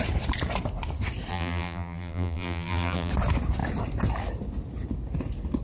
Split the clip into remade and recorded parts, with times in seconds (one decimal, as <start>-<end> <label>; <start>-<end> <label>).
0.0-1.3 recorded; 1.3-3.1 remade; 3.1-5.6 recorded